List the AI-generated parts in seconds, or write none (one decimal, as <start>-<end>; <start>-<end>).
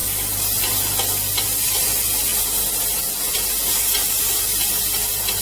none